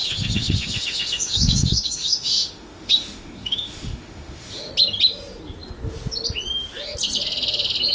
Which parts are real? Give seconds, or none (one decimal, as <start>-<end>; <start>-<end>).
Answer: 4.7-7.9